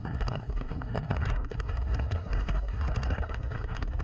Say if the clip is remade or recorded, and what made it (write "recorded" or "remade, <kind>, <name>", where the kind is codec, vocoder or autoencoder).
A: remade, codec, SNAC